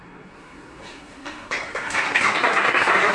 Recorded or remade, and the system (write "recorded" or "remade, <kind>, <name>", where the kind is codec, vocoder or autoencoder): remade, codec, SNAC